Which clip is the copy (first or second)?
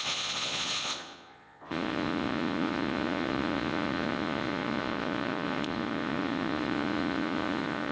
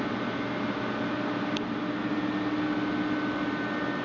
first